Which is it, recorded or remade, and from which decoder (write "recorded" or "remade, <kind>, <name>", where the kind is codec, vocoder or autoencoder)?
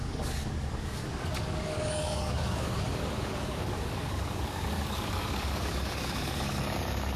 remade, codec, DAC